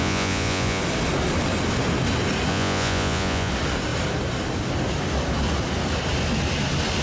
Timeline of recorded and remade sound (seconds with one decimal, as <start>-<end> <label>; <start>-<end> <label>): 0.0-0.8 remade; 0.8-2.5 recorded; 2.5-3.5 remade; 3.5-7.0 recorded